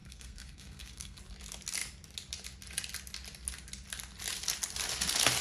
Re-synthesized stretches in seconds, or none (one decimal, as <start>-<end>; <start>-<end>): 0.0-1.2